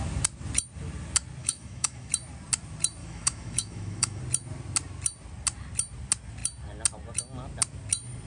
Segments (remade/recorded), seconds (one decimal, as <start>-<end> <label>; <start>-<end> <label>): 0.0-1.4 recorded; 1.4-2.1 remade; 2.1-3.0 recorded; 3.0-4.2 remade; 4.2-8.3 recorded